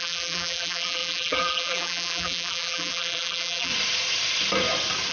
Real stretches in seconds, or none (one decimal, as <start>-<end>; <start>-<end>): 3.7-5.1